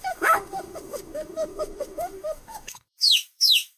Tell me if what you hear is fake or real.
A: fake